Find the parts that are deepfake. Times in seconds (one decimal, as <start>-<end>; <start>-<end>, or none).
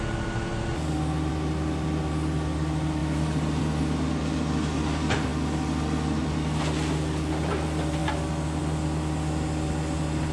none